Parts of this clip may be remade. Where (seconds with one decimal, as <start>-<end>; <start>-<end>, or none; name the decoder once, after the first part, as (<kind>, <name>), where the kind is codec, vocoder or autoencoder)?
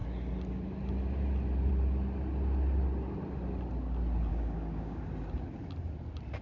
4.3-5.0 (codec, DAC)